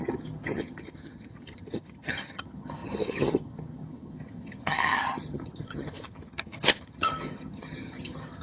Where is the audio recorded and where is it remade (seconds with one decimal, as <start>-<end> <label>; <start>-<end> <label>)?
0.0-8.4 remade